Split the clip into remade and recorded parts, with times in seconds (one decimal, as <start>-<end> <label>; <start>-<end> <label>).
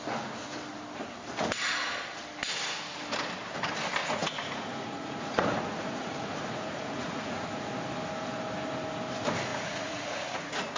0.0-4.0 recorded; 4.0-7.7 remade; 7.7-9.5 recorded; 9.5-10.8 remade